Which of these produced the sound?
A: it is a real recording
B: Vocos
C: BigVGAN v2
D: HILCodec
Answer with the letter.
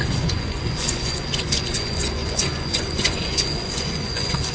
B